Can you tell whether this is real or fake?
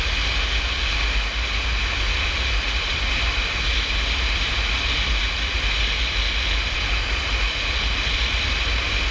real